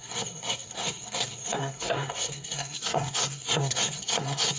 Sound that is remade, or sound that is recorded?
remade